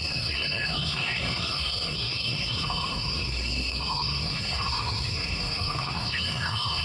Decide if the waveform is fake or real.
fake